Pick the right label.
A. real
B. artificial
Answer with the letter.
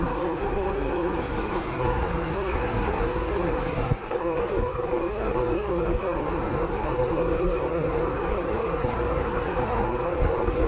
B